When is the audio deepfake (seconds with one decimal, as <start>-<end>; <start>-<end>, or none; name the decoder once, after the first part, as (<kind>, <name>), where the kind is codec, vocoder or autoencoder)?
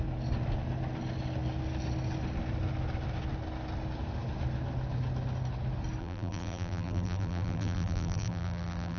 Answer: 6.0-9.0 (vocoder, BigVGAN v2)